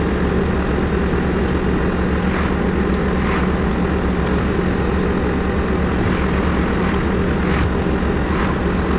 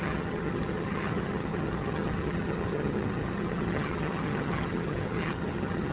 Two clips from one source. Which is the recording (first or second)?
first